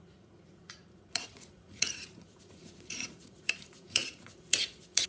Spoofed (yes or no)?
yes